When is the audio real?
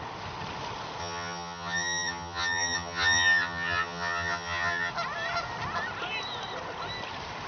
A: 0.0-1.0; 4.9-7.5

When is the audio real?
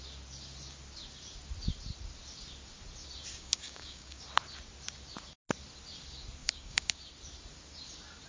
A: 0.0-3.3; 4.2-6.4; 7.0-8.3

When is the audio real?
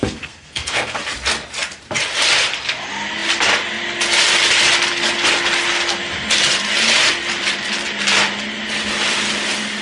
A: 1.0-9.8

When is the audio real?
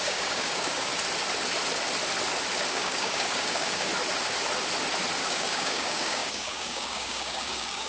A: 0.9-2.7; 3.9-5.2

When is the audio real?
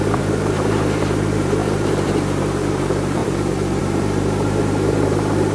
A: 3.2-3.8